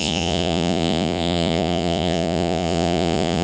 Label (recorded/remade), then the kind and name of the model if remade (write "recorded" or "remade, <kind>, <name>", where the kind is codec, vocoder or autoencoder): remade, vocoder, Vocos